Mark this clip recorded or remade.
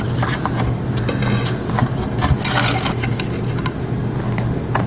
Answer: recorded